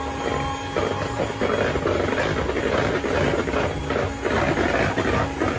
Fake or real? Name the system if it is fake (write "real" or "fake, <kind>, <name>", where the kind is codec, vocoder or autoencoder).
real